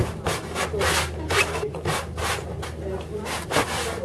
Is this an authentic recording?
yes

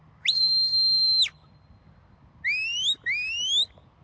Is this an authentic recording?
yes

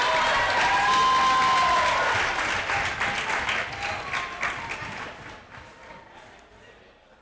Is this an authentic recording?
yes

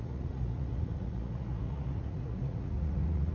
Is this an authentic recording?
no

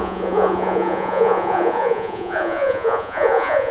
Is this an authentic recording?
no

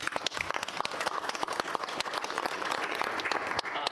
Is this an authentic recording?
no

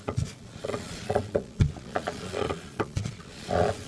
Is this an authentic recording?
no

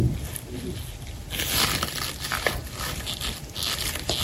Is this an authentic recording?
yes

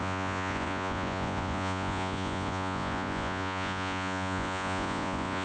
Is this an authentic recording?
no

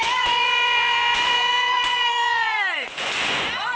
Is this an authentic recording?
no